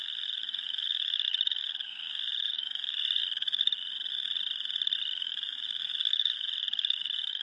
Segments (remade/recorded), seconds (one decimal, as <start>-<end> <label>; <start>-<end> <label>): 0.0-3.2 remade; 3.2-5.0 recorded; 5.0-7.4 remade